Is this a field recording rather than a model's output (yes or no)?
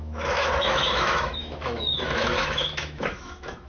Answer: no